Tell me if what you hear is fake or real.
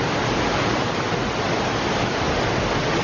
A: real